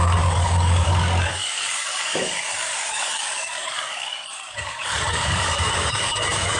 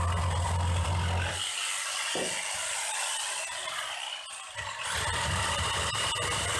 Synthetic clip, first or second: first